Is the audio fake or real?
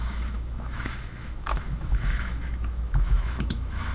fake